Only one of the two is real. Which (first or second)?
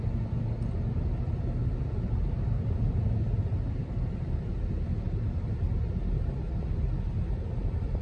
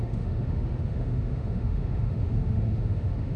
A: first